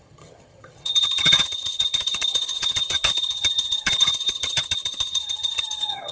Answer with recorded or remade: remade